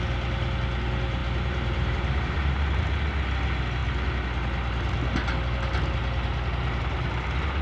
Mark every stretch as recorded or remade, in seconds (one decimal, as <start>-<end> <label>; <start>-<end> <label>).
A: 0.0-1.2 recorded; 1.2-2.9 remade; 2.9-7.6 recorded